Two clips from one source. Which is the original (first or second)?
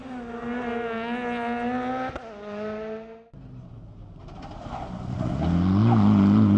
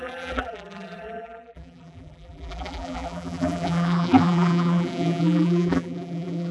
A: first